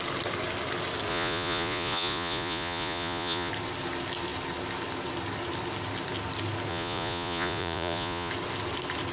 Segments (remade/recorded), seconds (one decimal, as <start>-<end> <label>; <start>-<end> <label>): 0.0-1.1 recorded; 1.1-3.5 remade; 3.5-6.7 recorded; 6.7-8.3 remade; 8.3-9.1 recorded